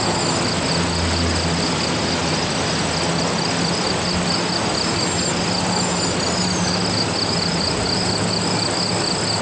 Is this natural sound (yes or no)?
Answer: yes